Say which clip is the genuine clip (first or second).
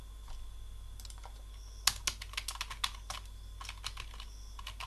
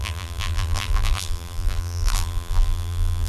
first